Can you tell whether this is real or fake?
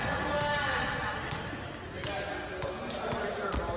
real